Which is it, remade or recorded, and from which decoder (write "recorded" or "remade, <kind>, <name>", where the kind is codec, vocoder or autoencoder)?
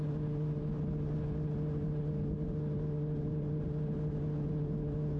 recorded